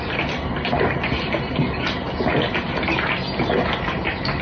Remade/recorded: recorded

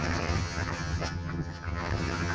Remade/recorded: remade